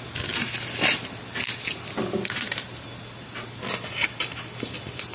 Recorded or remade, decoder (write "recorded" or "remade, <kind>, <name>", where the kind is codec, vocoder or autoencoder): recorded